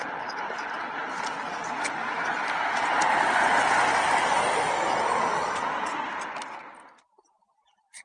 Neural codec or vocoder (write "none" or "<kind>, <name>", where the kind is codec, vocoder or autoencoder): none